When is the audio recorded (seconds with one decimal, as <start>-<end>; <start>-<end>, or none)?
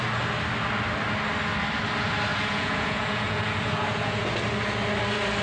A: 0.0-2.3; 4.3-5.4